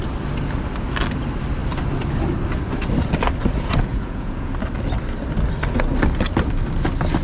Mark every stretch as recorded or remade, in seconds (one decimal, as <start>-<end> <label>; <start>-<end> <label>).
0.0-3.9 recorded; 3.9-4.5 remade; 4.5-7.2 recorded